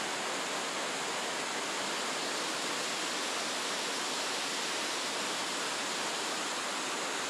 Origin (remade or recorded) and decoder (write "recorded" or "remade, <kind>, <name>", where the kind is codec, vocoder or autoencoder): recorded